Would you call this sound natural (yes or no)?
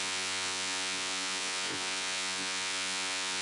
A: no